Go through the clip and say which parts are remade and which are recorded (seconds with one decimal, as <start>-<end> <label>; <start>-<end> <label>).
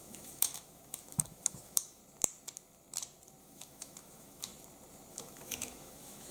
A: 0.0-2.0 remade; 2.0-3.4 recorded; 3.4-4.5 remade; 4.5-5.1 recorded; 5.1-6.3 remade